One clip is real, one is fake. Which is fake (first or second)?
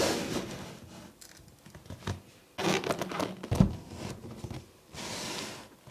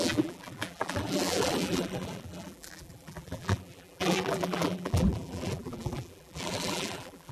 second